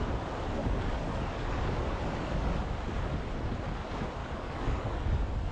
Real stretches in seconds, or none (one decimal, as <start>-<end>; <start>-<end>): 0.0-0.6; 2.6-4.2